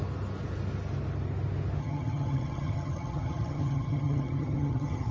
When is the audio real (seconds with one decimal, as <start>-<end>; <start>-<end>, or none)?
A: 0.0-1.8